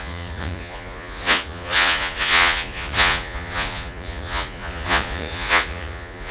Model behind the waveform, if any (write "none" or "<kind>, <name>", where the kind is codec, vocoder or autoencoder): vocoder, Vocos